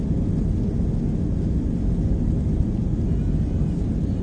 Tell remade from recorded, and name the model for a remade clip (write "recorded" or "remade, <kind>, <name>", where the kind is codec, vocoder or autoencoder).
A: recorded